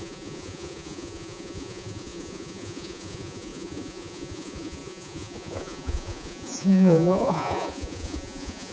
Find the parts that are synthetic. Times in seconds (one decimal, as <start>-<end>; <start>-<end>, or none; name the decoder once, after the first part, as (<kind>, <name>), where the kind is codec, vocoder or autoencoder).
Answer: 0.0-8.7 (vocoder, Vocos)

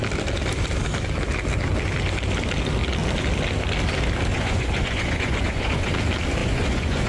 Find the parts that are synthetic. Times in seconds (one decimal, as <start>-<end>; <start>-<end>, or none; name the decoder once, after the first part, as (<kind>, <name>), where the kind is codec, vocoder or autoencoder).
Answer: 4.3-5.9 (vocoder, Vocos); 6.4-7.1